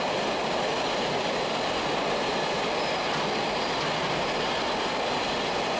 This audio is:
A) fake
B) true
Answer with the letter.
B